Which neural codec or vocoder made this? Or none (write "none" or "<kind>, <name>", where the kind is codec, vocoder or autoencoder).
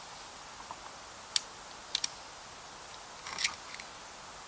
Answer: none